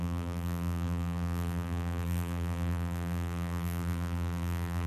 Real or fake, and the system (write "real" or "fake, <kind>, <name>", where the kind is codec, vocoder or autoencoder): fake, vocoder, BigVGAN v2